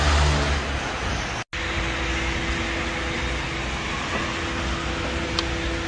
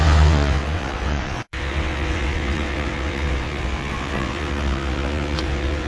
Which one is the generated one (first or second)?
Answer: second